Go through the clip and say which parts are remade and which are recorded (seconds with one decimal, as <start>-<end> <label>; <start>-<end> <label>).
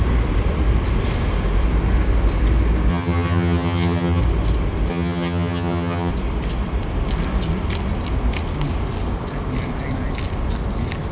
0.0-2.9 recorded; 2.9-4.2 remade; 4.2-4.9 recorded; 4.9-6.1 remade; 6.1-11.1 recorded